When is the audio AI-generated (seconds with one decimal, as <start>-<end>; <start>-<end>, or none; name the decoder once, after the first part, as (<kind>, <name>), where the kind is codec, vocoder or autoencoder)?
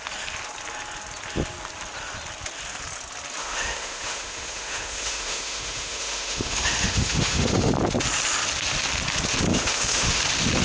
3.4-7.7 (autoencoder, DAC-VAE); 9.5-10.2